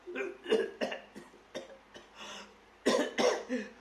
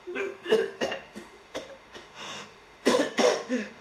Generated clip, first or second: second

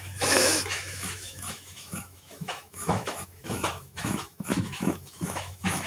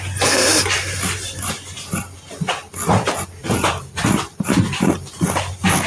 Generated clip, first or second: first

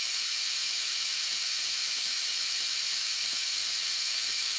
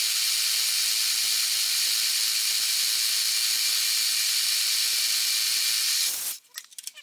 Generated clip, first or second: first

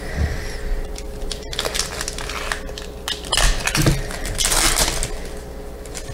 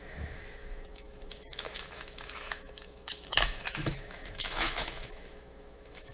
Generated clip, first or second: second